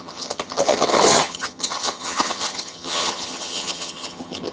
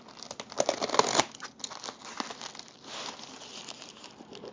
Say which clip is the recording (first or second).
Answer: second